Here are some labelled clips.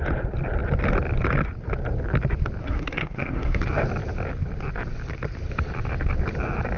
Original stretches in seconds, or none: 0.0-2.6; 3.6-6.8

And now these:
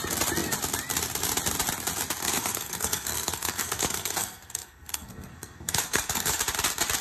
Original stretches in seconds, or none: 0.0-2.2; 6.4-7.0

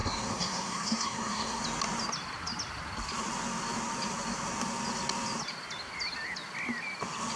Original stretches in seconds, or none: 1.6-7.4

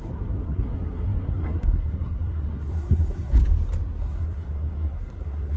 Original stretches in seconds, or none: 3.4-4.0

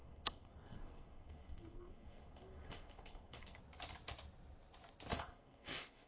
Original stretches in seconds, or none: 3.6-5.1

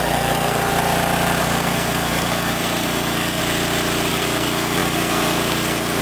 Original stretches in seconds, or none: 0.7-1.4; 3.4-4.1